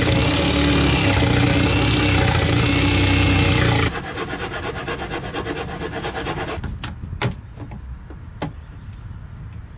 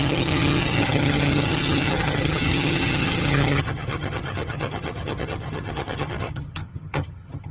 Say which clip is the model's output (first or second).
second